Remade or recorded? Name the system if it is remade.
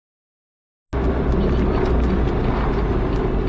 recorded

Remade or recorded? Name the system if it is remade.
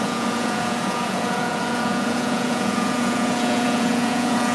remade, vocoder, Vocos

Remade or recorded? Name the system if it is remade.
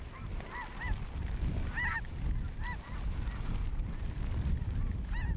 recorded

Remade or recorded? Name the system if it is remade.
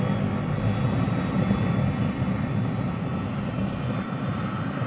recorded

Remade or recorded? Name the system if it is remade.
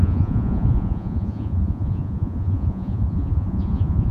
remade, vocoder, Vocos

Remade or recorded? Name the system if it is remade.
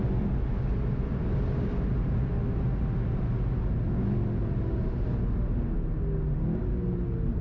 recorded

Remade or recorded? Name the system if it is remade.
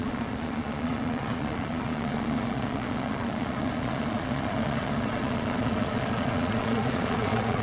remade, vocoder, Vocos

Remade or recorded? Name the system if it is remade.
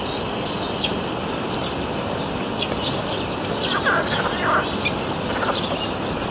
recorded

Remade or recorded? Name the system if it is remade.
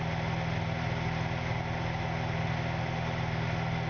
recorded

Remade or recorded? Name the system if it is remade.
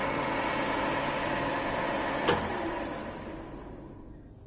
recorded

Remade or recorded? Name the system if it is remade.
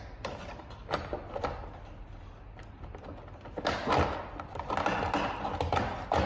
recorded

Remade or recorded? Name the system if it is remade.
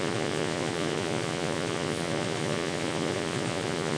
remade, vocoder, Vocos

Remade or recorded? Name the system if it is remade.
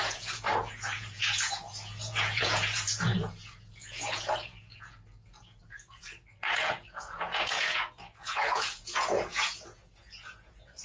remade, vocoder, Vocos